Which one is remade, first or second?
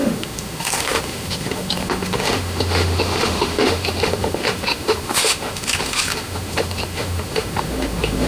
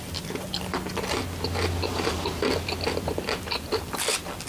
first